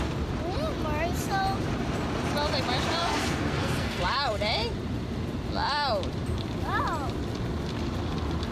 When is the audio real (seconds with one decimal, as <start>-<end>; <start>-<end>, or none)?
0.0-3.0; 4.0-8.5